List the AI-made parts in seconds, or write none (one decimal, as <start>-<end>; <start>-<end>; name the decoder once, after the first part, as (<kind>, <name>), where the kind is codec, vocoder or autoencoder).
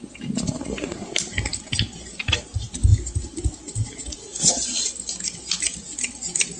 none